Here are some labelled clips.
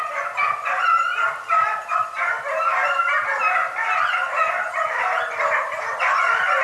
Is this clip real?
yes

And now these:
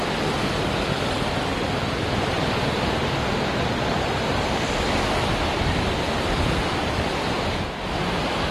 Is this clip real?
yes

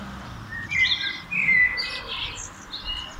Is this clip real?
yes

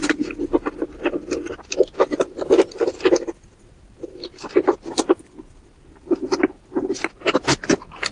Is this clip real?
yes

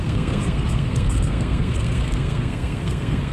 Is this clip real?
no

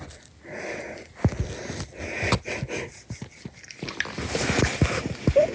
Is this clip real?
yes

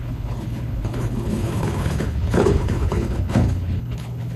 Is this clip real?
no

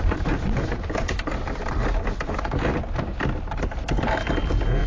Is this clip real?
yes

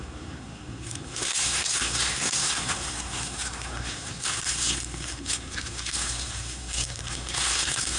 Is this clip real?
no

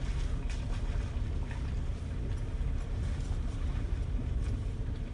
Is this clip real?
yes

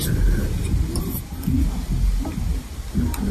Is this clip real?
yes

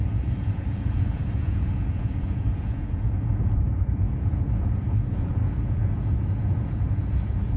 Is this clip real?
no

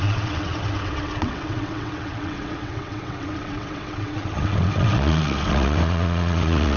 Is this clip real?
no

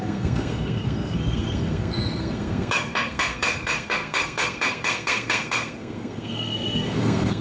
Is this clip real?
no